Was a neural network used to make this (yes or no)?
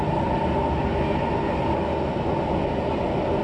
no